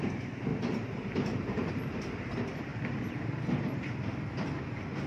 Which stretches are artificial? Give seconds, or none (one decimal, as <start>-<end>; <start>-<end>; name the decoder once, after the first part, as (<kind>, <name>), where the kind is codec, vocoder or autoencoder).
0.5-2.0 (vocoder, BigVGAN v2)